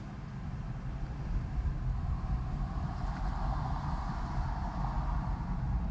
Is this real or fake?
real